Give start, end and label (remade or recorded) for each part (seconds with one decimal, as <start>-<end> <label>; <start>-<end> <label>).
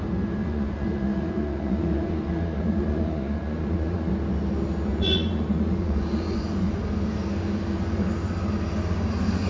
0.0-0.4 recorded; 0.4-4.1 remade; 4.1-4.9 recorded; 4.9-6.8 remade; 6.8-9.5 recorded